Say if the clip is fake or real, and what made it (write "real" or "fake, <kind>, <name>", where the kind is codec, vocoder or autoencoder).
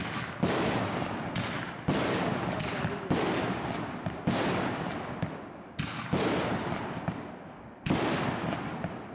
real